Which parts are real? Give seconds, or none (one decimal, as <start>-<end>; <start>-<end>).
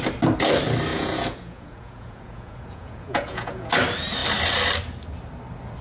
0.0-0.9; 3.7-5.8